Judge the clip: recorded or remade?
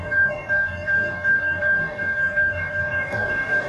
remade